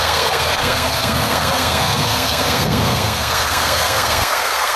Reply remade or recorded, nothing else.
remade